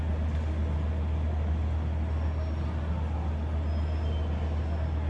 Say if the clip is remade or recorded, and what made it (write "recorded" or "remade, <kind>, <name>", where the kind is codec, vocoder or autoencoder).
recorded